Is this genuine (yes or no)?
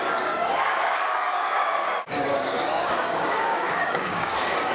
no